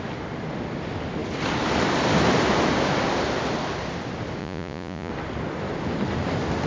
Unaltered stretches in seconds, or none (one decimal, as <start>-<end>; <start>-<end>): 0.0-4.4; 5.1-6.7